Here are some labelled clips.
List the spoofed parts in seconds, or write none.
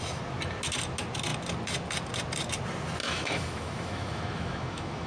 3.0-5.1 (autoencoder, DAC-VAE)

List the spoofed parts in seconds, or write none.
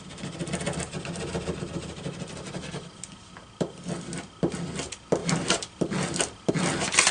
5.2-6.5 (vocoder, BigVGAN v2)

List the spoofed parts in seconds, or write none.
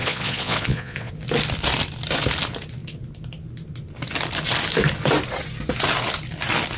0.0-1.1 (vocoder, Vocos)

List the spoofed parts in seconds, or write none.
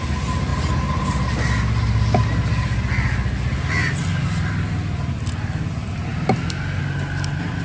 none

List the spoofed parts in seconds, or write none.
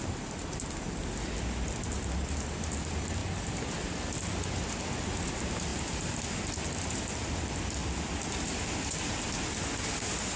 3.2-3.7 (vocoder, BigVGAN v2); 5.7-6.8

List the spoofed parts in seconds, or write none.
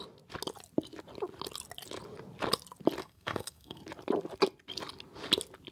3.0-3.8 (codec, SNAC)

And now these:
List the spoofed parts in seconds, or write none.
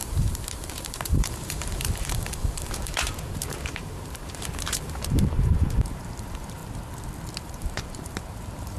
0.0-6.6 (vocoder, BigVGAN v2); 7.4-8.8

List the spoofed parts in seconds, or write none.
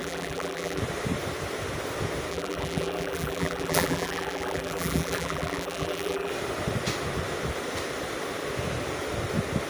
0.0-0.8 (vocoder, BigVGAN v2); 2.3-6.3